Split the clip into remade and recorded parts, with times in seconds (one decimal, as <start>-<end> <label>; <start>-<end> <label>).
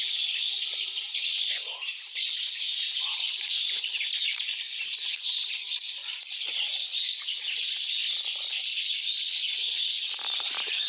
0.0-8.0 remade; 8.0-9.5 recorded; 9.5-10.9 remade